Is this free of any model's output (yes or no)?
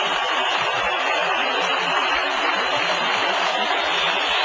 yes